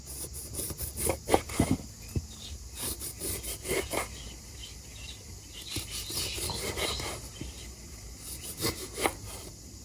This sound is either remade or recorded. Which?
recorded